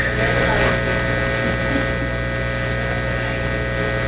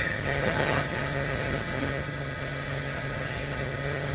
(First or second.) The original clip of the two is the first